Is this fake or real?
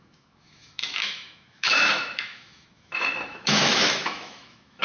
fake